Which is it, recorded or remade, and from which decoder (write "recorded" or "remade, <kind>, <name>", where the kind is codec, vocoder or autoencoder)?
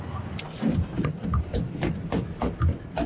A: recorded